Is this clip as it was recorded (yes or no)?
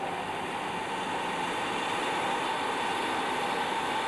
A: yes